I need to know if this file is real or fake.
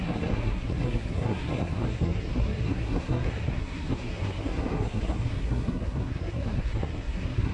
fake